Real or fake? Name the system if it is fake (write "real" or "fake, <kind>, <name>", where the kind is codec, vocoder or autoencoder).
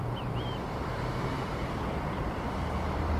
fake, vocoder, BigVGAN v2